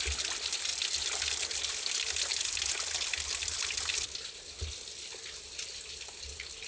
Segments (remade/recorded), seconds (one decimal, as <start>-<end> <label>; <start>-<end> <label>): 0.0-6.7 recorded